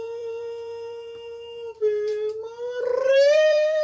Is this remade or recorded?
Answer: remade